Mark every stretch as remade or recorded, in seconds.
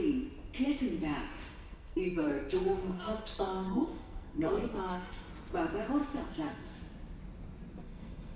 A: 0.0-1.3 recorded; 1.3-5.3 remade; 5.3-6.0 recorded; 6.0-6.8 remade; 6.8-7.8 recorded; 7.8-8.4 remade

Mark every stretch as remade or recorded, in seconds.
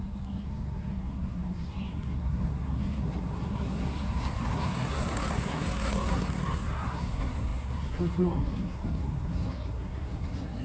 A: 0.0-10.6 remade